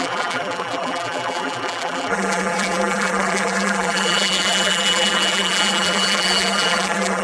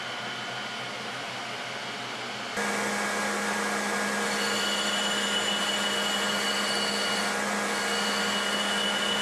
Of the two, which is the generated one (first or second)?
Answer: first